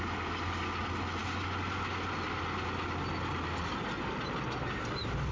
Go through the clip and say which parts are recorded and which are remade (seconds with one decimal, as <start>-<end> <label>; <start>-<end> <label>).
0.0-5.3 recorded